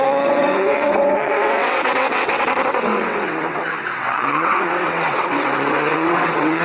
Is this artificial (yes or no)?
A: yes